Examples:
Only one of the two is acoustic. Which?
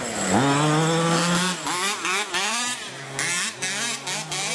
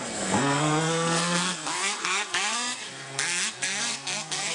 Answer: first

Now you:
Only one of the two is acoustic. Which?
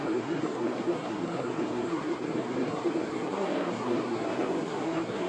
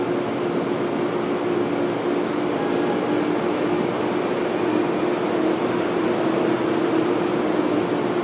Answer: second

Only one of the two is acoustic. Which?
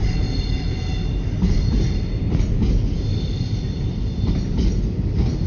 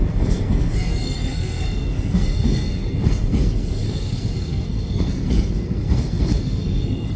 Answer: first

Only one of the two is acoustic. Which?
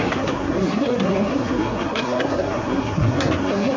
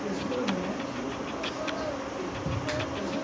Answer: second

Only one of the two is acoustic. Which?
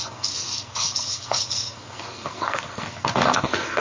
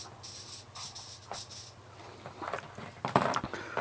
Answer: second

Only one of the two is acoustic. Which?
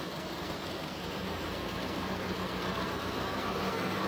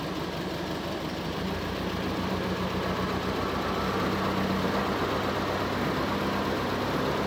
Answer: second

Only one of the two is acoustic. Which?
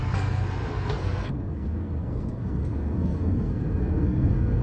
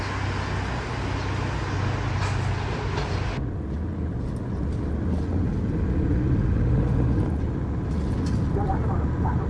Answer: second